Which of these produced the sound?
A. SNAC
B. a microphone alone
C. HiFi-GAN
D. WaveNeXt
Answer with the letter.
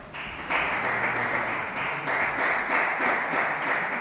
B